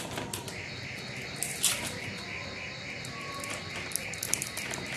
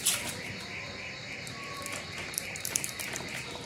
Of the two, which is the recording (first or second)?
first